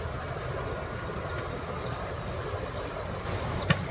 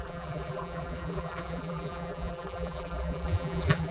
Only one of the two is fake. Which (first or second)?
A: second